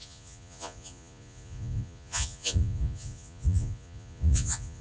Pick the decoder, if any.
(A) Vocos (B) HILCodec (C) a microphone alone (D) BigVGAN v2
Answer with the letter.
A